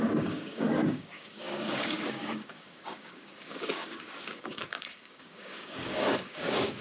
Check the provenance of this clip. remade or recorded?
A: remade